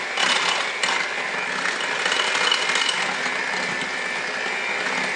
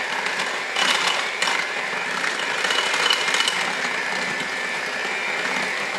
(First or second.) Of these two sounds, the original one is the first